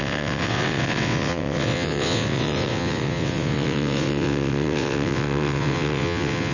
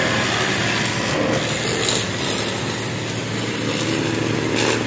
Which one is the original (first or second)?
second